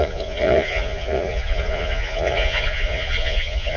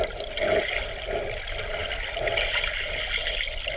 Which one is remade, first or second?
first